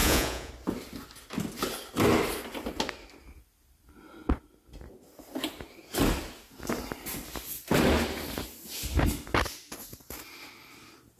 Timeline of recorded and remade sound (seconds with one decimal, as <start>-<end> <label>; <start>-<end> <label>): 0.0-0.5 remade; 0.5-11.2 recorded